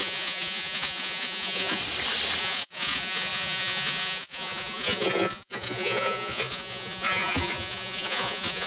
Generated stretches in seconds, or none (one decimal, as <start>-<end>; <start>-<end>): 0.0-1.8; 2.4-8.7